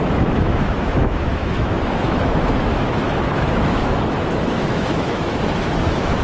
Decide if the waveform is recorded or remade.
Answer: remade